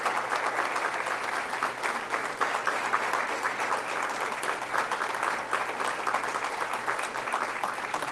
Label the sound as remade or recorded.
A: recorded